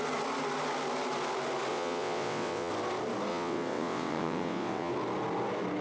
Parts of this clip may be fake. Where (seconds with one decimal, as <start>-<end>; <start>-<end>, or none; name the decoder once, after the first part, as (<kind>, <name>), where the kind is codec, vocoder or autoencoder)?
1.7-2.7 (vocoder, WaveNeXt); 3.3-4.9